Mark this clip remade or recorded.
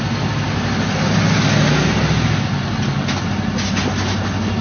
recorded